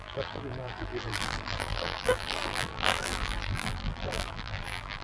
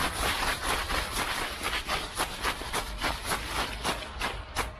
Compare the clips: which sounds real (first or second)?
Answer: second